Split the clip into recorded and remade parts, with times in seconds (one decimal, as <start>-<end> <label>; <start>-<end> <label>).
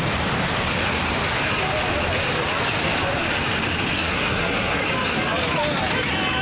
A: 0.0-3.9 recorded; 3.9-4.8 remade; 4.8-6.4 recorded